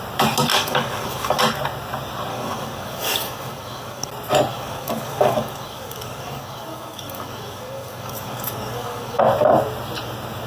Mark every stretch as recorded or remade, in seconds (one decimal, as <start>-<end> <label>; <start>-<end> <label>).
0.0-0.5 recorded; 0.5-1.4 remade; 1.4-2.3 recorded; 2.3-4.1 remade; 4.1-4.5 recorded; 4.5-9.2 remade; 9.2-10.5 recorded